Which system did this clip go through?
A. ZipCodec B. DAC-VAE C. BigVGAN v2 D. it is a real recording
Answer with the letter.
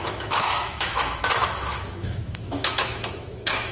B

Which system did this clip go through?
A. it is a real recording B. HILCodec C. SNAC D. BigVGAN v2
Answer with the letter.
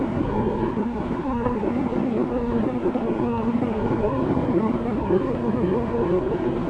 C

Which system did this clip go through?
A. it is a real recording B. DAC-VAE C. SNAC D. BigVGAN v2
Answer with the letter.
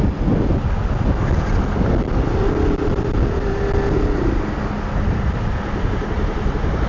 A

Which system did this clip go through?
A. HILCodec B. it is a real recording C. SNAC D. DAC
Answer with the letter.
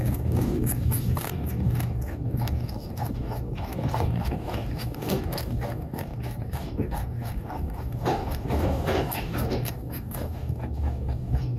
D